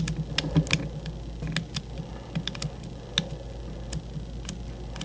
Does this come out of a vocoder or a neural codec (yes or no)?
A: no